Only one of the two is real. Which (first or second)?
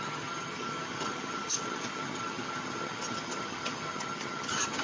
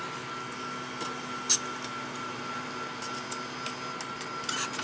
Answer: second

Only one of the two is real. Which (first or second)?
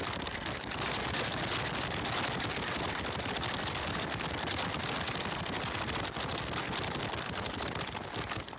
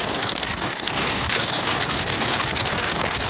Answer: first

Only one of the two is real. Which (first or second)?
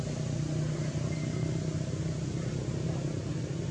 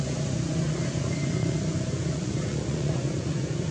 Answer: first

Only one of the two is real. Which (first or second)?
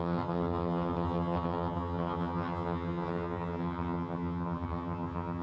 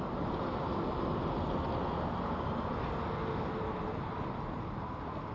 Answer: second